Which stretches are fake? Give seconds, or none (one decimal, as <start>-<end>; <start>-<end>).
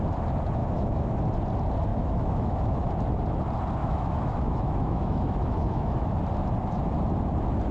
0.6-1.2; 1.9-2.9; 3.8-6.2